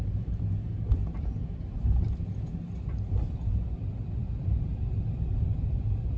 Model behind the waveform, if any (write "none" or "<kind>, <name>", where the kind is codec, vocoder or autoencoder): vocoder, BigVGAN v2